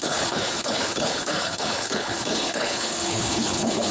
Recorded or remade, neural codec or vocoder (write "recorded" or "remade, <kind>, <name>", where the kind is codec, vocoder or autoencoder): remade, codec, HILCodec